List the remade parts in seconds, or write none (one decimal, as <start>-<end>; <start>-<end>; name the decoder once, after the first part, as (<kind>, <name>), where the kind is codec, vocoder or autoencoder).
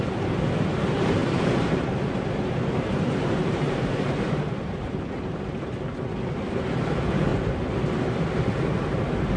1.2-5.6 (vocoder, BigVGAN v2)